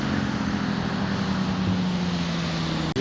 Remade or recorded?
recorded